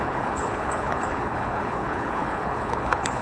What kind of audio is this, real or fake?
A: fake